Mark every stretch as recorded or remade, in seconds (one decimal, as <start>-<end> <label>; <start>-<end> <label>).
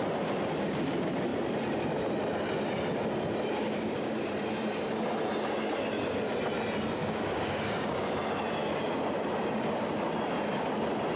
0.0-3.6 recorded; 3.6-4.3 remade; 4.3-7.0 recorded; 7.0-8.1 remade; 8.1-11.2 recorded